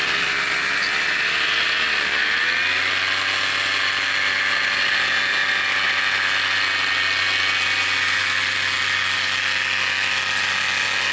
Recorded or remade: recorded